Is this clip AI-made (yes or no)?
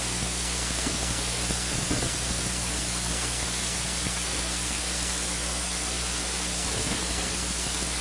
yes